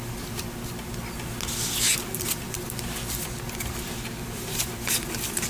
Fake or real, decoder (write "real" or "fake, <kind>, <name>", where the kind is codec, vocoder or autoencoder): real